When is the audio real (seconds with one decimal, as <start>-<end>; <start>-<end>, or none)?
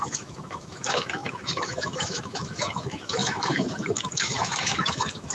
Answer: none